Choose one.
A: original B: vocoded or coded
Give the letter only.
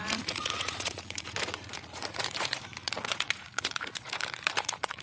B